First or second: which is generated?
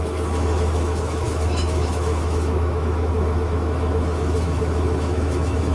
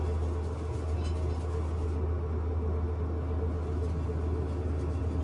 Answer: first